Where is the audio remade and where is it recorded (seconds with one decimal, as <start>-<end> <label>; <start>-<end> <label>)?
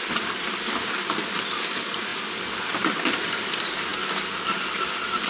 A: 0.0-5.3 recorded